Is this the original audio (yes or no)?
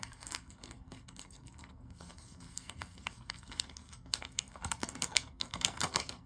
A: no